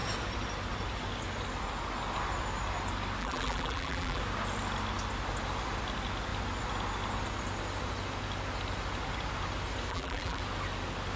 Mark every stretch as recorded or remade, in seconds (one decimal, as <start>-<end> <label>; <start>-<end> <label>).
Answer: 0.0-3.2 recorded; 3.2-4.2 remade; 4.2-9.9 recorded; 9.9-10.4 remade; 10.4-11.2 recorded

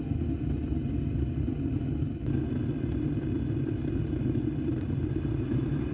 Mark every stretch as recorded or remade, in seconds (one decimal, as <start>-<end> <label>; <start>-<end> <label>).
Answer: 0.0-4.7 recorded; 4.7-5.9 remade

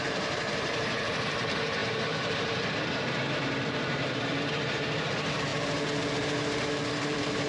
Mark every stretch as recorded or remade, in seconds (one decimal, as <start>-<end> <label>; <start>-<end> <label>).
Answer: 0.0-5.5 remade; 5.5-6.9 recorded; 6.9-7.5 remade

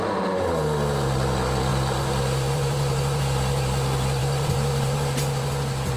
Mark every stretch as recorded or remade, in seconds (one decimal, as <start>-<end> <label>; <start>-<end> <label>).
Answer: 0.0-1.7 recorded; 1.7-3.2 remade; 3.2-4.2 recorded; 4.2-5.5 remade; 5.5-6.0 recorded